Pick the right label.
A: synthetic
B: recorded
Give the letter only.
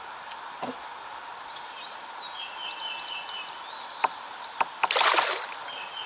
B